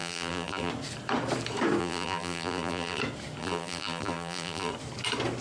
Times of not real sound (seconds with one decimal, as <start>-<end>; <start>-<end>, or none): 0.0-0.7; 1.8-3.0; 3.4-4.7